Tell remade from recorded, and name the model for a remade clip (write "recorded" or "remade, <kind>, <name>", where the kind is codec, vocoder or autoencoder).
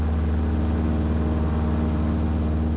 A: recorded